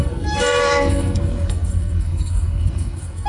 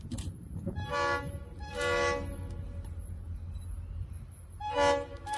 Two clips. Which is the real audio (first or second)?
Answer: second